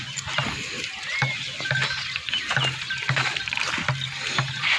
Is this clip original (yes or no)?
yes